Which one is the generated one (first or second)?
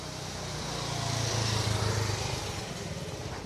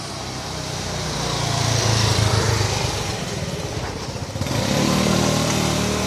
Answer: second